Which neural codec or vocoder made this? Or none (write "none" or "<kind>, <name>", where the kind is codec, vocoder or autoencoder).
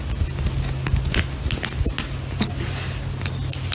none